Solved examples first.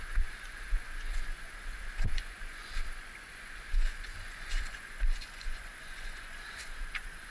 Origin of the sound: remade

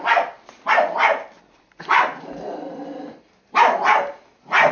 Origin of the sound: recorded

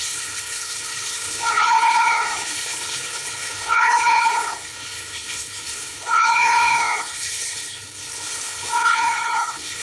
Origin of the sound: remade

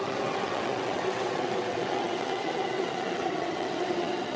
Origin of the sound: remade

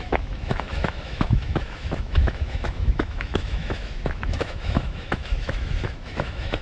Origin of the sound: remade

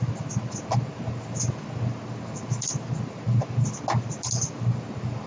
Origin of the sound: recorded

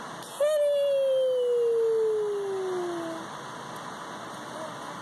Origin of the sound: recorded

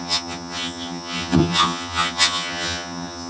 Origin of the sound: remade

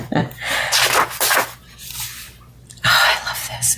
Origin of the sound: recorded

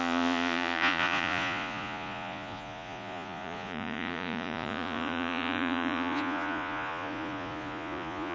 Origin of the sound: remade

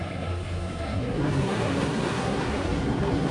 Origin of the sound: remade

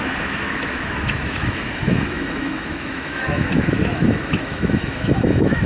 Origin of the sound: remade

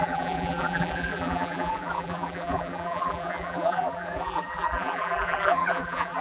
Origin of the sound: remade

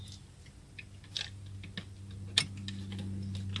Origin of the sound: recorded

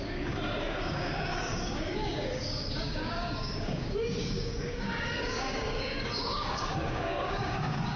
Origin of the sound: remade